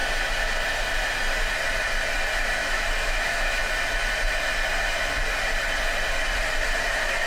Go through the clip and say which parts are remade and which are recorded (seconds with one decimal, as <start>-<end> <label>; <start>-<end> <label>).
0.0-2.6 recorded; 2.6-3.6 remade; 3.6-7.3 recorded